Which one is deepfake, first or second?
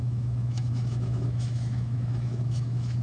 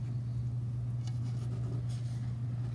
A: first